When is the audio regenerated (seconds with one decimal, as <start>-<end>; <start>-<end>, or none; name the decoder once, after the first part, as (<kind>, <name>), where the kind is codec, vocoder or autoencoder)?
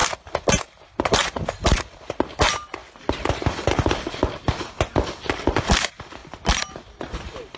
0.5-1.6 (vocoder, BigVGAN v2); 2.3-2.8; 5.6-6.2; 6.7-7.6